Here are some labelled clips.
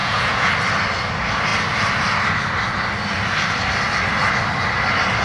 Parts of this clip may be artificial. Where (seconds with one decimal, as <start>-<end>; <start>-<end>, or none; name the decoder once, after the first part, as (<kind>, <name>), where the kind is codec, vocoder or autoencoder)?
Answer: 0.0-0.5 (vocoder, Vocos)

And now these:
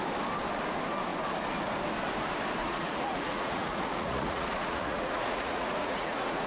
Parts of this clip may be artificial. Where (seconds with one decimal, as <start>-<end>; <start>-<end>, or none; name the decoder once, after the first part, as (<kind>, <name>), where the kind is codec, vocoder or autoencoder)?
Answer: 2.6-6.5 (vocoder, Vocos)

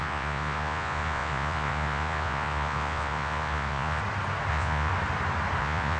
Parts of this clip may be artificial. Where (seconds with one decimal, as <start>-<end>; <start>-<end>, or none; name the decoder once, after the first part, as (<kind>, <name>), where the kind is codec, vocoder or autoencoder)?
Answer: 0.0-4.0 (vocoder, Vocos); 4.5-4.9; 5.6-6.0

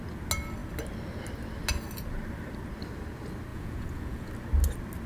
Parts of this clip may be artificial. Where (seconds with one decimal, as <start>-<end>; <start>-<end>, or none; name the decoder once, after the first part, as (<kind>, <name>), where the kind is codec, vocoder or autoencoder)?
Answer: 3.5-4.3 (vocoder, Vocos)